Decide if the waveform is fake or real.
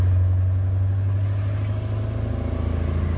real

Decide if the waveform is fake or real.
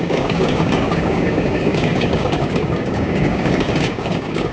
fake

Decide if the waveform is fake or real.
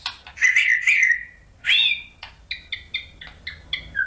real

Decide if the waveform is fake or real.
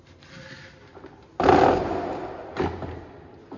real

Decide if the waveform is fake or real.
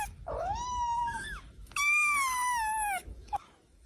fake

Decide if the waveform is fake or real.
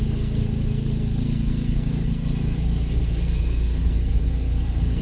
fake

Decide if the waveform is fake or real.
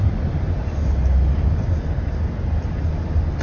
real